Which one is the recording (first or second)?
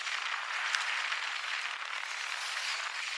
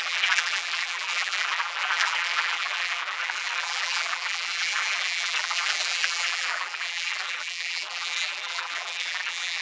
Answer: first